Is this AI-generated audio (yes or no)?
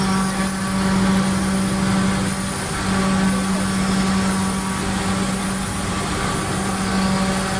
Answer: no